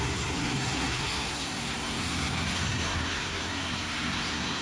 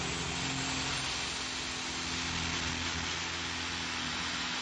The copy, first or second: first